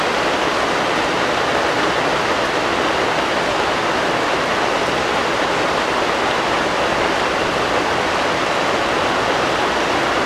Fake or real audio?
real